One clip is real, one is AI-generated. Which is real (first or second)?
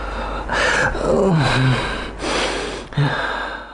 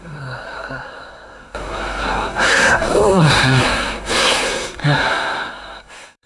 first